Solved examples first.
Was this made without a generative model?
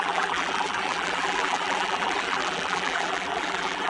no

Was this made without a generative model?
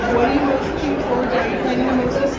yes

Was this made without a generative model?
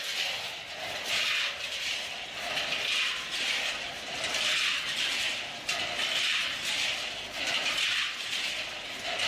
yes